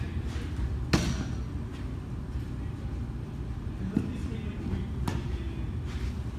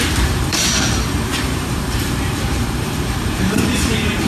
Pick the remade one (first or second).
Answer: second